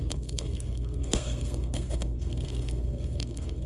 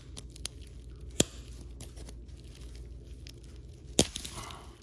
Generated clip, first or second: first